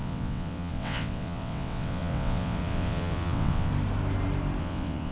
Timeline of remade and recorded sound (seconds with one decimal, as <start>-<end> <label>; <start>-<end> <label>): 0.0-3.7 remade; 3.7-4.6 recorded; 4.6-5.1 remade